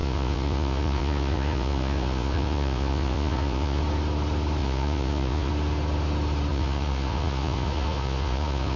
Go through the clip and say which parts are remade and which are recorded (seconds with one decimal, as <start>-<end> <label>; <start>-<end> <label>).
0.0-3.8 remade; 3.8-4.6 recorded; 4.6-5.5 remade; 5.5-6.5 recorded; 6.5-8.8 remade